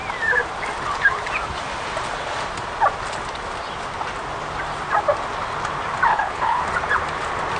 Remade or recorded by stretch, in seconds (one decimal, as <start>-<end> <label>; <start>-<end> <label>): 0.0-6.1 recorded; 6.1-6.6 remade; 6.6-7.6 recorded

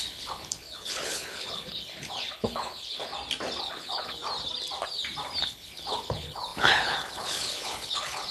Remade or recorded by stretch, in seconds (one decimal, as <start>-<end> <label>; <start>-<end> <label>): 0.0-3.1 remade; 3.1-3.6 recorded; 3.6-4.2 remade; 4.2-5.4 recorded; 5.4-8.3 remade